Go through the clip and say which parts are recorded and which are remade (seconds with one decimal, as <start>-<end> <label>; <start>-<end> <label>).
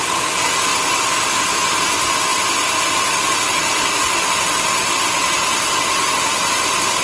0.0-0.7 recorded; 0.7-1.8 remade; 1.8-2.3 recorded; 2.3-3.5 remade; 3.5-5.5 recorded; 5.5-7.0 remade